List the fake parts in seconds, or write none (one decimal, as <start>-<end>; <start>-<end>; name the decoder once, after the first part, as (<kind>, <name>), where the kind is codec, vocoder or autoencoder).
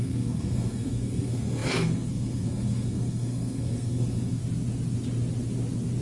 0.0-4.4 (codec, SNAC)